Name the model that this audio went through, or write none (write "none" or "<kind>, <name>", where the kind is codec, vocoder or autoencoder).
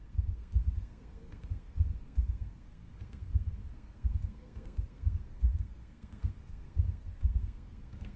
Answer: codec, SNAC